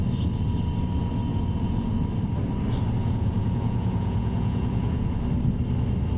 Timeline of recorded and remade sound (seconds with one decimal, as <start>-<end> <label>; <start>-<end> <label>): 0.0-1.3 recorded; 1.3-1.9 remade; 1.9-3.0 recorded; 3.0-5.2 remade; 5.2-6.2 recorded